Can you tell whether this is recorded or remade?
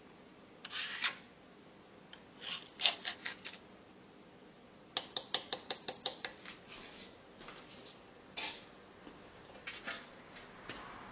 recorded